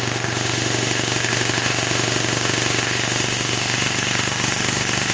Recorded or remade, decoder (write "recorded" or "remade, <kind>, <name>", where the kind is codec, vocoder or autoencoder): remade, autoencoder, DAC-VAE